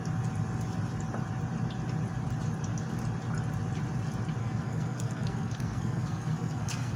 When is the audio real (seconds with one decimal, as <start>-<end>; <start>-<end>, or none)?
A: 0.0-4.4